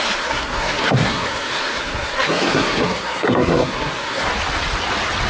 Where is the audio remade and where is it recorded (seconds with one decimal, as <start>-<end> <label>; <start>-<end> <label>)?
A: 0.0-4.2 remade; 4.2-5.3 recorded